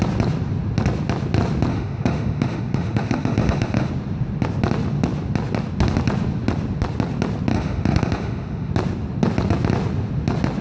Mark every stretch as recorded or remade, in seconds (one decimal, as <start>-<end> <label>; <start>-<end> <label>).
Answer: 0.0-1.7 recorded; 1.7-3.9 remade; 3.9-7.5 recorded; 7.5-8.7 remade; 8.7-10.6 recorded